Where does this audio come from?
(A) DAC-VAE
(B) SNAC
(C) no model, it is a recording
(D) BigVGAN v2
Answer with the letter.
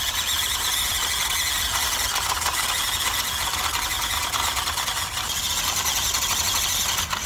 C